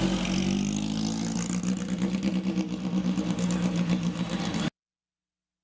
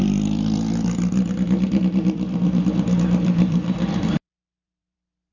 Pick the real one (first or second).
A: first